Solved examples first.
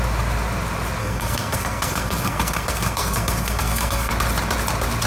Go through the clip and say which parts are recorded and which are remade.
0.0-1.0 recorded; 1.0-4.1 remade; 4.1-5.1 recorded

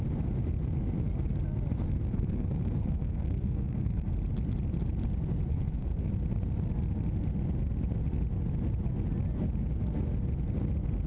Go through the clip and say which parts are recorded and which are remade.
0.0-1.9 recorded; 1.9-4.1 remade; 4.1-5.5 recorded; 5.5-6.1 remade; 6.1-11.1 recorded

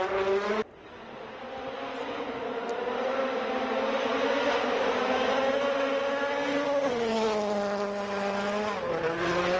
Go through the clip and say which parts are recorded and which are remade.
0.0-6.5 recorded; 6.5-7.1 remade; 7.1-9.6 recorded